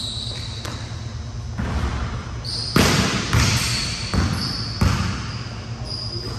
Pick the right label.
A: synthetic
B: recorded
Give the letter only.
B